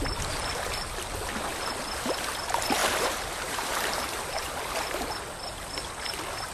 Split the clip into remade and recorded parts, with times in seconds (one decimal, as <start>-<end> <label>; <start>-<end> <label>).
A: 0.0-2.8 recorded; 2.8-5.1 remade; 5.1-6.5 recorded